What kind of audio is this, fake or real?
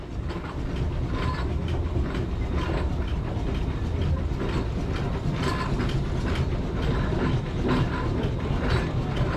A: real